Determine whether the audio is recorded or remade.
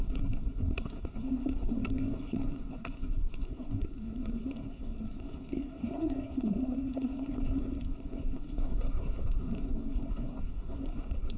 remade